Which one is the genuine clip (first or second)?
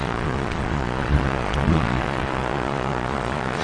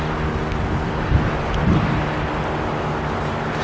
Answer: second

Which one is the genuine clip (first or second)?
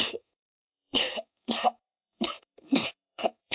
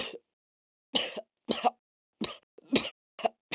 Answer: second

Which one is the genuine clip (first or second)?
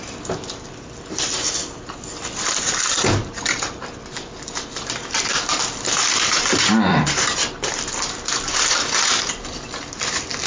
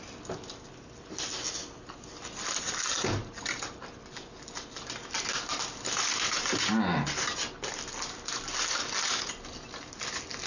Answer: second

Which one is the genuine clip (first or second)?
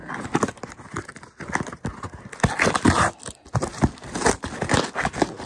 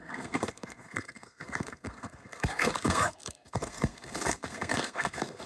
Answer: first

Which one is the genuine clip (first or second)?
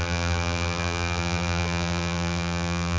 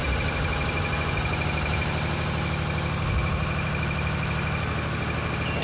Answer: second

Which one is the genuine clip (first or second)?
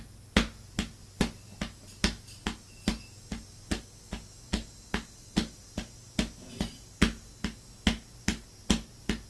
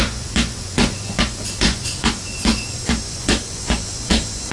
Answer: first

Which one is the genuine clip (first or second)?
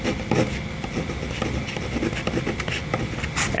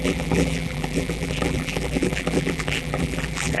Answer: first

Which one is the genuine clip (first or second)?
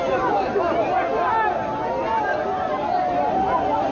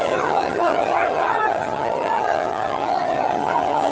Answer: first